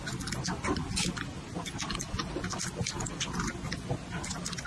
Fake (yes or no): no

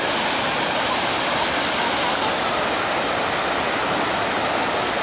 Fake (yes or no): no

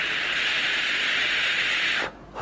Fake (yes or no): no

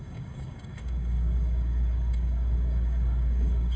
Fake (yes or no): yes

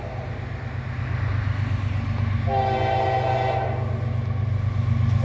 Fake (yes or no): no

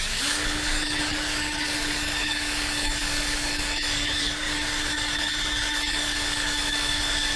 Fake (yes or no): yes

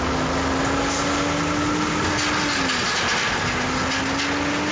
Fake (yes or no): no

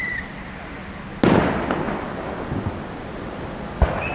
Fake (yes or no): no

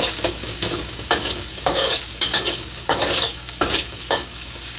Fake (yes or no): yes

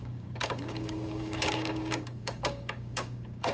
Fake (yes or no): yes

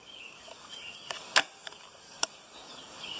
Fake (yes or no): yes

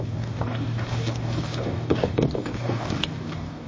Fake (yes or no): yes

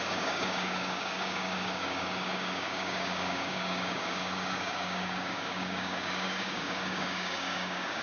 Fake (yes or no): yes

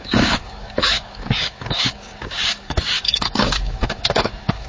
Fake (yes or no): yes